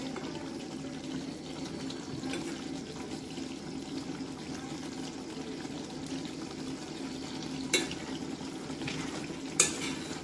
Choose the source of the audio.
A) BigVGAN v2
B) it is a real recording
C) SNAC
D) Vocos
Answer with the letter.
B